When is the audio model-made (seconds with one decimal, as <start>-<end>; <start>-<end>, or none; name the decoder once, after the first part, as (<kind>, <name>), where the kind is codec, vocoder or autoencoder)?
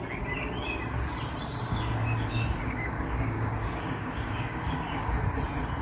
1.6-5.1 (codec, DAC)